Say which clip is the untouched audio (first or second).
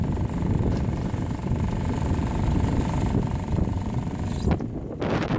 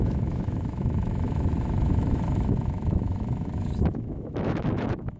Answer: first